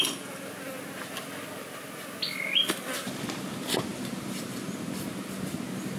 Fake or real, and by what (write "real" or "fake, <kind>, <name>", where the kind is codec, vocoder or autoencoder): real